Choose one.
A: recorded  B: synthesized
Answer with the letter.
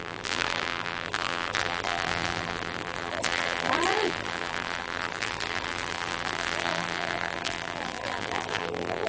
B